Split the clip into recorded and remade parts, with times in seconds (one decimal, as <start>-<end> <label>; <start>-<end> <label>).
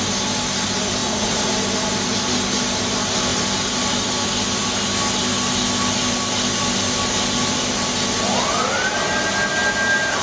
0.0-1.0 recorded; 1.0-1.5 remade; 1.5-10.2 recorded